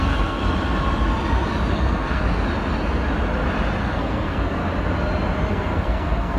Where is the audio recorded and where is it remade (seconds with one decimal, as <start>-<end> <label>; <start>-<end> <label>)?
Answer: 0.0-0.4 remade; 0.4-1.7 recorded; 1.7-2.2 remade; 2.2-3.8 recorded; 3.8-4.6 remade; 4.6-5.5 recorded; 5.5-6.4 remade